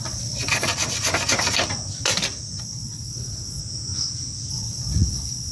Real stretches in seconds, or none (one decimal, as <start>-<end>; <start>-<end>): 0.7-2.6; 3.6-4.5